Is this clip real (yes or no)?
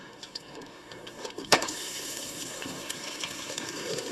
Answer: no